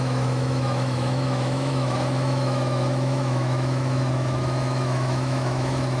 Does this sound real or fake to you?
fake